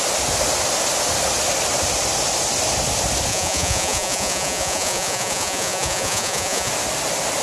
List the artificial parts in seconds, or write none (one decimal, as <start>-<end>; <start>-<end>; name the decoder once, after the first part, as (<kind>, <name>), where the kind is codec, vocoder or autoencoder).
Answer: 3.3-6.7 (vocoder, Vocos)